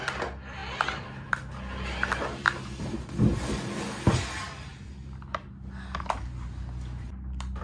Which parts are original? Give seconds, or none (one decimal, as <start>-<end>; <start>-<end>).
0.0-7.6